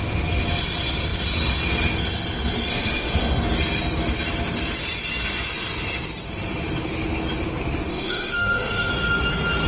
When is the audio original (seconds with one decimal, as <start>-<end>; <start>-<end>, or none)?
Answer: 0.0-2.7; 3.4-7.9; 8.9-9.7